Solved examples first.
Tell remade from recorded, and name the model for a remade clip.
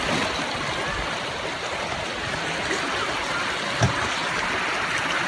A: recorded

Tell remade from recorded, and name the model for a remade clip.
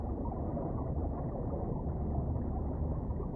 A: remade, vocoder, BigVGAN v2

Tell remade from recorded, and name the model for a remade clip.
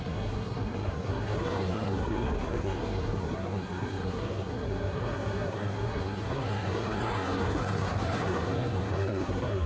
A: remade, codec, SNAC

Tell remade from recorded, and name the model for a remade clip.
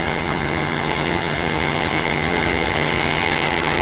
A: remade, vocoder, HiFi-GAN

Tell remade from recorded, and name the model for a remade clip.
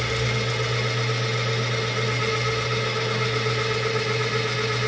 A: recorded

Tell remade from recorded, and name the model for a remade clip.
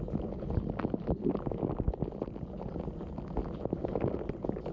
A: recorded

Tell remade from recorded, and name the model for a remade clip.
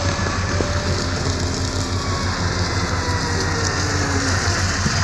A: recorded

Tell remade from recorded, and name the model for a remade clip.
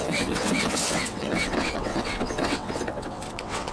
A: remade, vocoder, WaveNeXt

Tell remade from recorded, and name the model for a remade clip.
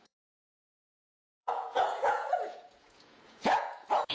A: remade, vocoder, Vocos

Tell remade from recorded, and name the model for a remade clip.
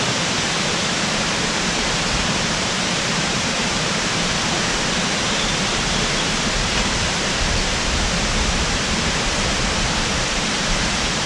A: remade, vocoder, BigVGAN v2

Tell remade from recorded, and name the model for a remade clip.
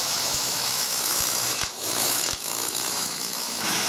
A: remade, autoencoder, DAC-VAE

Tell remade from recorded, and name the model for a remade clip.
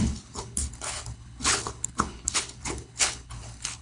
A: remade, codec, HILCodec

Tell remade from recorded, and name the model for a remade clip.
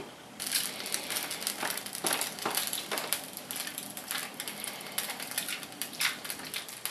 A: recorded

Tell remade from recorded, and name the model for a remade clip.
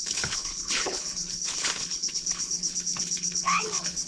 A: remade, codec, HILCodec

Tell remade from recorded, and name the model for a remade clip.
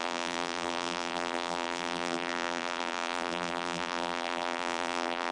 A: remade, vocoder, BigVGAN v2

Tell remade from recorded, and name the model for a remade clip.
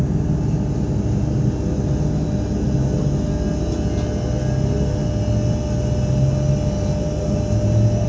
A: recorded